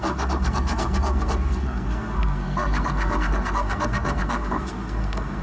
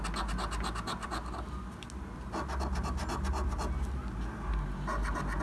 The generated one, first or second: first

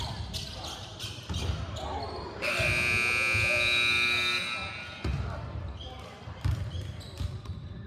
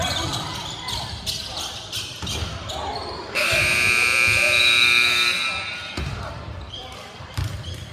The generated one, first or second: second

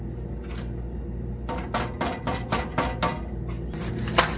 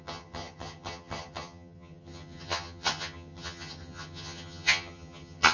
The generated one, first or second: second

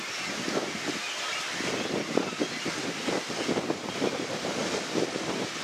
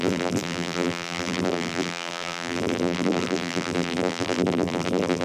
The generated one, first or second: second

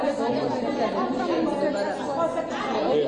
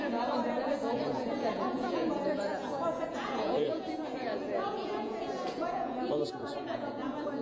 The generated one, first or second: second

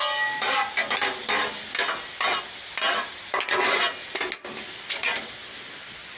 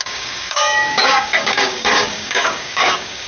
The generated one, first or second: second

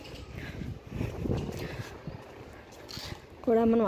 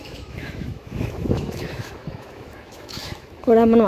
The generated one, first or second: second